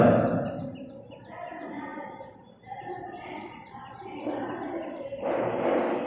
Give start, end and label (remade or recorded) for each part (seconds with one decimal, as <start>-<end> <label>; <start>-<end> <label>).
0.0-1.9 recorded; 1.9-5.6 remade; 5.6-6.1 recorded